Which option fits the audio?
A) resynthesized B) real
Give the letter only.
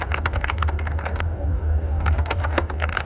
A